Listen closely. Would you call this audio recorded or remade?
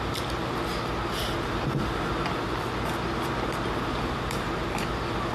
recorded